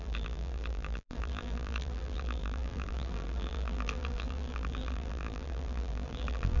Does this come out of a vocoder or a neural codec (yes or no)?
yes